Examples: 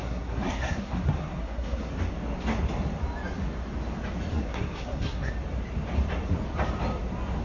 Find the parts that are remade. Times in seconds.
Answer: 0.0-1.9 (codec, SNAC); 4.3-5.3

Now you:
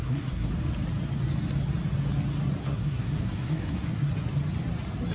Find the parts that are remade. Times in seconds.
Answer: 0.0-0.5 (codec, SNAC); 2.6-4.1

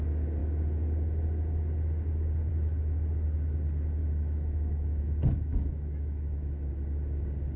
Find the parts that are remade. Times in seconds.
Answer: 4.0-5.0 (autoencoder, DAC-VAE); 5.5-6.7

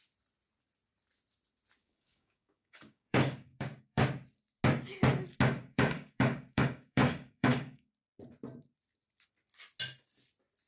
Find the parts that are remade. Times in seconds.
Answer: 1.8-4.0 (codec, DAC); 5.6-7.9

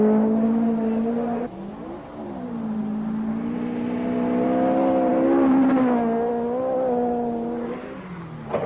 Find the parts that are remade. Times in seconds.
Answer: none

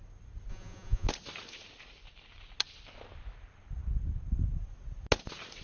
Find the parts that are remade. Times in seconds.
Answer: 0.5-1.1 (vocoder, Vocos)

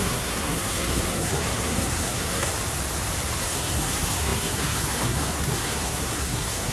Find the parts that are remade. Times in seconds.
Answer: 0.0-2.5 (codec, SNAC); 3.4-6.7